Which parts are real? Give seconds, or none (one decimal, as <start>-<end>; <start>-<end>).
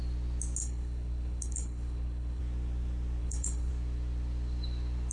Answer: 0.0-0.6; 2.4-3.2; 3.7-5.1